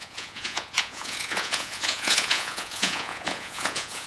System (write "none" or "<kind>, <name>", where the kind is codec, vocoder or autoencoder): vocoder, Vocos